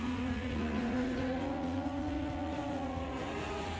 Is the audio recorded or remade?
remade